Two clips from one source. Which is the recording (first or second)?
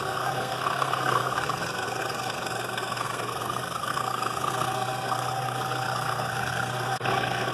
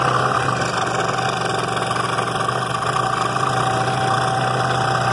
second